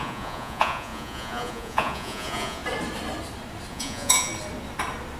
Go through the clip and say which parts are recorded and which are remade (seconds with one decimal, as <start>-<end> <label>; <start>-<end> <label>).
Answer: 0.0-2.6 remade; 2.6-3.7 recorded; 3.7-4.3 remade; 4.3-5.2 recorded